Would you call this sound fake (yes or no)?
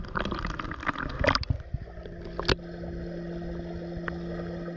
no